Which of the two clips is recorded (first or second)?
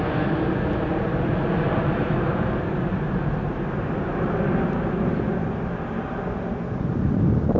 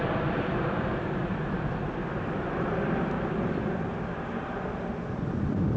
first